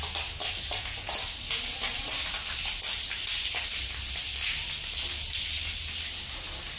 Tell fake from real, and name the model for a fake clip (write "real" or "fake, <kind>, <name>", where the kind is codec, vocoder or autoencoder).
real